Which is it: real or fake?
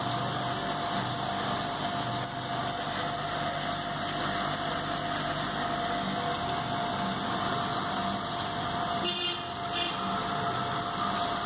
real